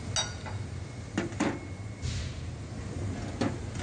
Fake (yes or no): no